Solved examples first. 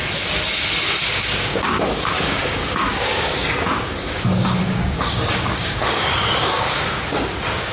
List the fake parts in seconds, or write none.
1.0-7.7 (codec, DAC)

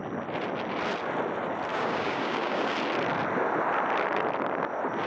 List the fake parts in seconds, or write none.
1.7-2.7 (codec, DAC)

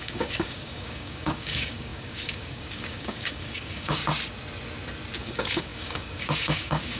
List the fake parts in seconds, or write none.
0.0-4.0 (codec, DAC); 5.2-7.0

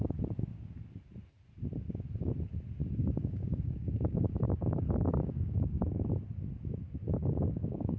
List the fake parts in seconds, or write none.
2.8-6.1 (codec, DAC); 7.2-8.0

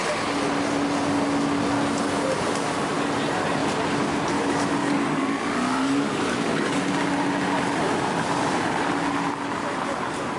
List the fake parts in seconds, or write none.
4.8-6.8 (codec, DAC)

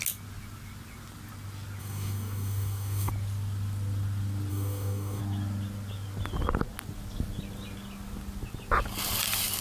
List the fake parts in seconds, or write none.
1.8-3.1 (codec, DAC); 4.5-5.2

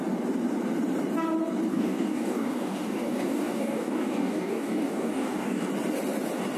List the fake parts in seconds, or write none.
1.7-5.7 (codec, DAC)